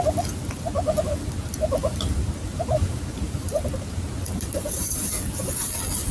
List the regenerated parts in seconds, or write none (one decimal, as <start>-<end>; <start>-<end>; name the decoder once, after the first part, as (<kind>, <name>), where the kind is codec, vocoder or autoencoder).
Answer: 1.8-5.0 (vocoder, BigVGAN v2)